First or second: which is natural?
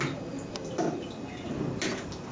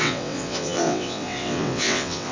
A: first